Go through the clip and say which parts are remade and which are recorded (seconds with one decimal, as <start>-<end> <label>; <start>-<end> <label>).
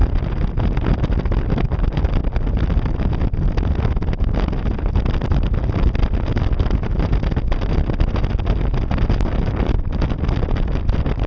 0.0-11.3 recorded